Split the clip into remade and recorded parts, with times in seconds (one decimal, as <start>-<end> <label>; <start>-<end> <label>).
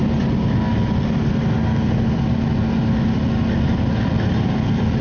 0.0-5.0 recorded